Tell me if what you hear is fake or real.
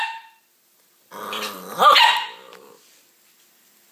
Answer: real